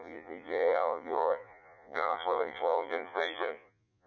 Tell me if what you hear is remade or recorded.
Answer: remade